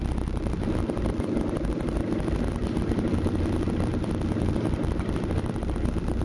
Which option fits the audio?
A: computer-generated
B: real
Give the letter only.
B